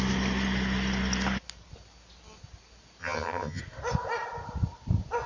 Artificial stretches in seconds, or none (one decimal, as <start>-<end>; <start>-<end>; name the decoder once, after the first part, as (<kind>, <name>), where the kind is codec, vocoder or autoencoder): 3.0-3.6 (vocoder, HiFi-GAN)

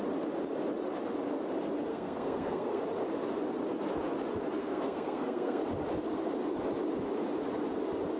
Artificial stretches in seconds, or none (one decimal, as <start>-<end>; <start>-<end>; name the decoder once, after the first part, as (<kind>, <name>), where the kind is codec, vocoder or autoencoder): 1.9-2.8 (codec, SNAC); 4.6-5.6